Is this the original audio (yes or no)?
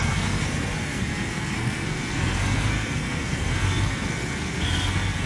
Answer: no